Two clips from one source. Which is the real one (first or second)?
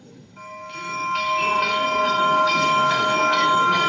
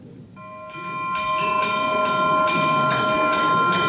second